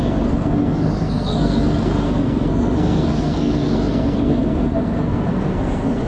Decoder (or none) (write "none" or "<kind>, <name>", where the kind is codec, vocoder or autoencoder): codec, SNAC